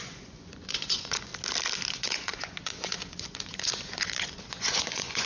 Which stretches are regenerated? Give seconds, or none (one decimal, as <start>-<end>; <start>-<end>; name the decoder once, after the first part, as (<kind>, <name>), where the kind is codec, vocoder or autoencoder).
0.0-1.3 (vocoder, Vocos); 1.9-5.3